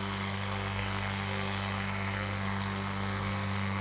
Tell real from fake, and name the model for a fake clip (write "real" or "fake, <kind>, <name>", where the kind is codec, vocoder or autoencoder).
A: fake, codec, SNAC